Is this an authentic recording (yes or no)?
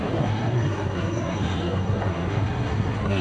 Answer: no